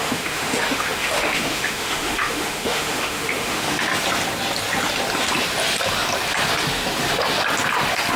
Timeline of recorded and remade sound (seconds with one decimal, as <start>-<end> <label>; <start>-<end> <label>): 0.0-3.9 remade; 3.9-8.2 recorded